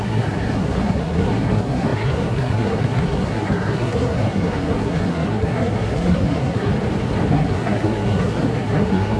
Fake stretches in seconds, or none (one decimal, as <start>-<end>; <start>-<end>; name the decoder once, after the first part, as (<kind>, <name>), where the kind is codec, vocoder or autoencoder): 0.0-6.7 (codec, SNAC); 7.3-9.2